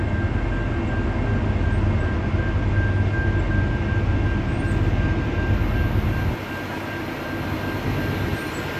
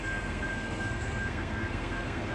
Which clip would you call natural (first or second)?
first